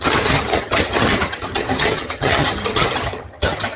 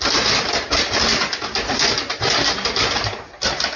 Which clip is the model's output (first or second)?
first